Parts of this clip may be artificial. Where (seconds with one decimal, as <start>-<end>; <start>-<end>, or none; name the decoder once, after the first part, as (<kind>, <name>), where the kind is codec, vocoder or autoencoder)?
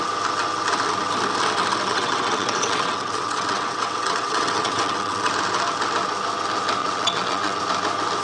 1.9-5.3 (vocoder, WaveNeXt); 6.8-7.6